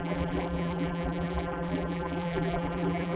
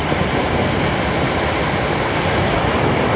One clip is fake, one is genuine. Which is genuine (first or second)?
second